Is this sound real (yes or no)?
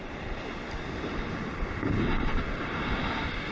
yes